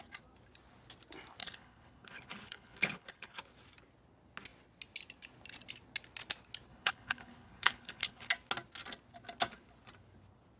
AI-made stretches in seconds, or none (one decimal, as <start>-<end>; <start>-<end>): 1.4-3.4; 6.7-8.3